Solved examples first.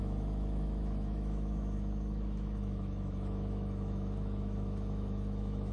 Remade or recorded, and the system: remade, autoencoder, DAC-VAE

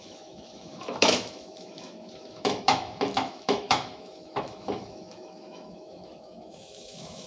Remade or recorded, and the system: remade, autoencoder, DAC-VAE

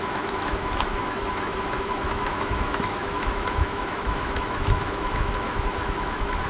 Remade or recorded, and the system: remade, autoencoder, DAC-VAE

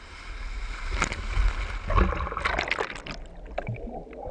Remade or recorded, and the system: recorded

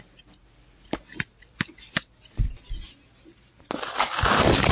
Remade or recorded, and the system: recorded